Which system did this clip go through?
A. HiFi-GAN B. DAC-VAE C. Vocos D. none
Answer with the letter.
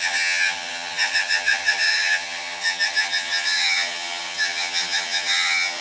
A